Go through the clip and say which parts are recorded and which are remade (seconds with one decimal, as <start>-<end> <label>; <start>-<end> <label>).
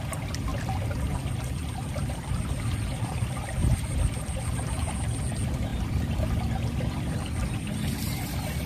0.0-0.5 recorded; 0.5-2.6 remade; 2.6-3.6 recorded; 3.6-5.2 remade; 5.2-5.7 recorded; 5.7-6.3 remade; 6.3-8.7 recorded